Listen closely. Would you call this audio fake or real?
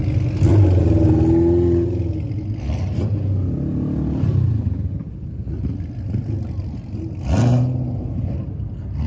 real